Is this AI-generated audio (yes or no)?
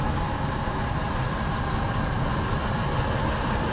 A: no